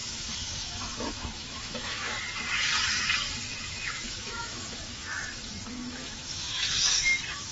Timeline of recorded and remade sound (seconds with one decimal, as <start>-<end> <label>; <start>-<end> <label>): 0.0-2.1 remade; 2.1-3.7 recorded; 3.7-5.0 remade; 5.0-5.7 recorded; 5.7-7.5 remade